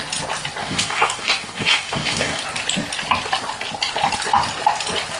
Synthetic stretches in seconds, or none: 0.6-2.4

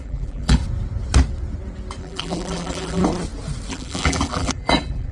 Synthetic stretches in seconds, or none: 0.0-0.6; 2.0-3.0; 3.7-5.1

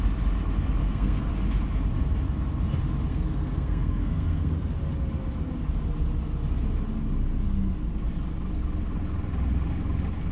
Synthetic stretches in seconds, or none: 0.8-1.3; 3.1-4.5

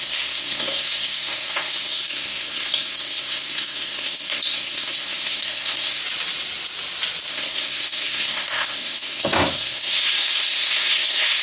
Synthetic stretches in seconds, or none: 0.0-6.0; 7.3-11.4

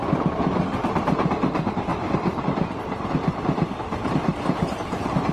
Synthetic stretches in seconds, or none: 0.0-0.6; 1.9-5.3

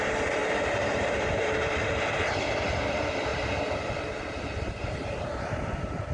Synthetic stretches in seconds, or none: 0.4-2.1; 3.3-6.1

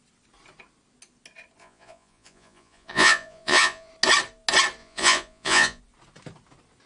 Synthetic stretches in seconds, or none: 1.6-3.9; 4.8-5.8